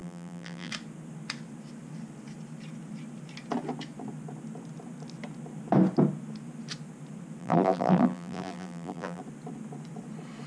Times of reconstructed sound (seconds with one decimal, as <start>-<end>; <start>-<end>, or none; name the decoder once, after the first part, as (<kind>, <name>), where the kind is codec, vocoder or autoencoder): 0.0-0.7 (vocoder, BigVGAN v2); 7.4-9.2